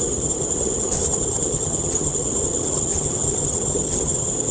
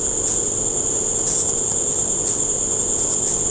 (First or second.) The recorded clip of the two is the second